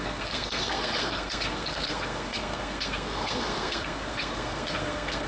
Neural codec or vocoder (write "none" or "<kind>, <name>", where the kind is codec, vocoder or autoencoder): codec, SNAC